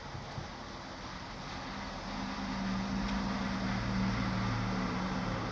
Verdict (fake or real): real